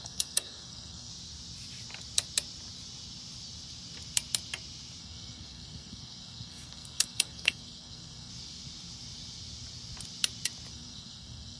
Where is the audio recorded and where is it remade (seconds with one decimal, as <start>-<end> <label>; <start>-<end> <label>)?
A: 0.0-1.1 remade; 1.1-5.0 recorded; 5.0-8.3 remade; 8.3-10.7 recorded; 10.7-11.6 remade